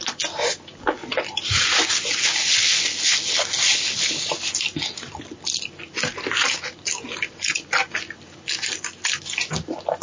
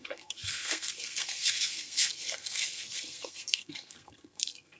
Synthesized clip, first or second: second